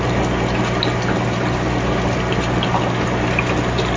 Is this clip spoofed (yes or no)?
no